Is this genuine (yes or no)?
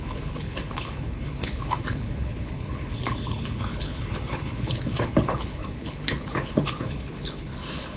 no